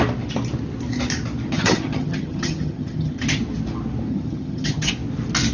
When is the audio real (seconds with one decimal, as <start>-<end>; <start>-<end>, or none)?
0.0-1.5; 3.4-4.1; 4.9-5.5